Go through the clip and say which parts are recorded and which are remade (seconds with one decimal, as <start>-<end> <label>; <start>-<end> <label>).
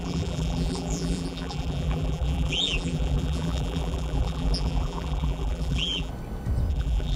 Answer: 0.0-6.1 remade; 6.1-6.7 recorded; 6.7-7.2 remade